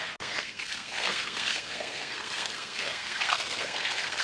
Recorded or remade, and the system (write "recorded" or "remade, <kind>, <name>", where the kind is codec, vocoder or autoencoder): remade, codec, SNAC